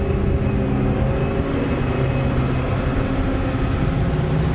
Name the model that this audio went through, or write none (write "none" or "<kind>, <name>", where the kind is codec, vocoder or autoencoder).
none